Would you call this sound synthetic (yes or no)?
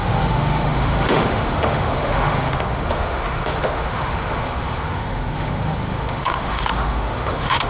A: yes